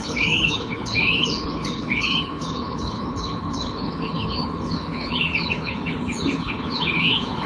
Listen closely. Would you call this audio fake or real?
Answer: fake